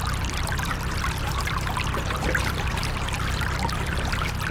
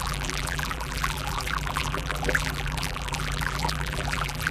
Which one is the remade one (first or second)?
second